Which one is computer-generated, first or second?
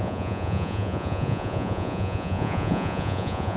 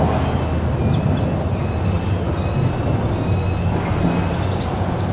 first